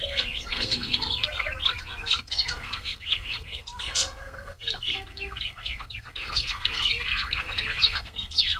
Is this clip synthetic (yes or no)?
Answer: yes